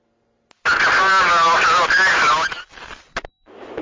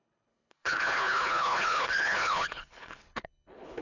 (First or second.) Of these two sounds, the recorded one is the first